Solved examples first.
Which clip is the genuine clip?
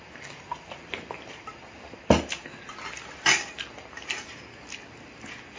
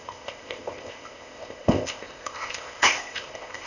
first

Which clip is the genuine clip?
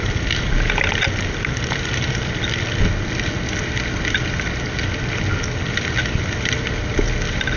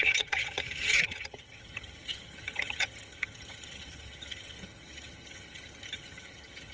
first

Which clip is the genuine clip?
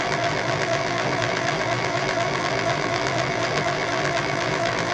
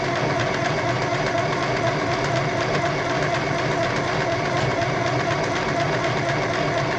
second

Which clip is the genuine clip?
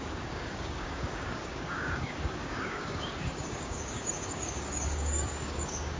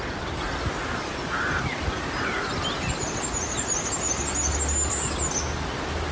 second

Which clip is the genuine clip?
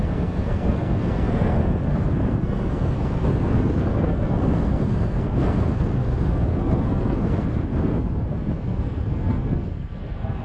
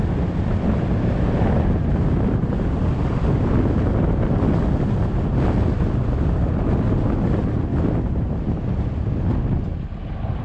second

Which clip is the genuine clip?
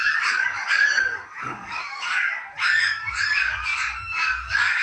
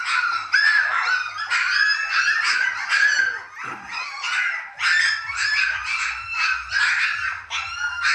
second